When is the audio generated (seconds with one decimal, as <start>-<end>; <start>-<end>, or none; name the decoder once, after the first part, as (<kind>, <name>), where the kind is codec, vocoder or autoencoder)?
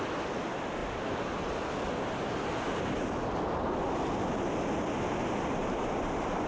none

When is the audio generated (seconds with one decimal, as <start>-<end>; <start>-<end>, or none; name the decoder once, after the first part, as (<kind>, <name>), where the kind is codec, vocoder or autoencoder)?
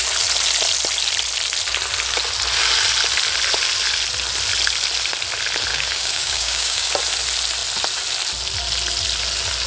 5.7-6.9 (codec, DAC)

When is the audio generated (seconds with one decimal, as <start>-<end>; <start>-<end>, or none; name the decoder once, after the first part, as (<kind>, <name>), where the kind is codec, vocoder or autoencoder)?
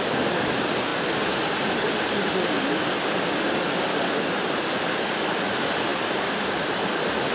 none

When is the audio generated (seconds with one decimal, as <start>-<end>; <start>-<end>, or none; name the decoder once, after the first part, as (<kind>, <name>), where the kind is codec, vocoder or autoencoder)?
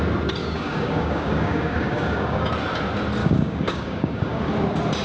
0.4-2.5 (codec, DAC); 3.2-4.5